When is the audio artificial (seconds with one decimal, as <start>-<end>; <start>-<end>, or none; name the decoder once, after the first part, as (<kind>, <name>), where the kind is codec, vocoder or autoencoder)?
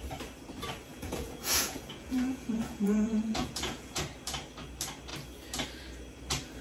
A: 0.9-4.0 (vocoder, Vocos)